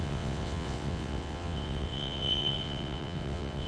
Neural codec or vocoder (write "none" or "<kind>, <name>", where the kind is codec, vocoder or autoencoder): vocoder, WaveNeXt